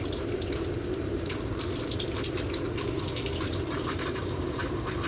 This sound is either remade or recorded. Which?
remade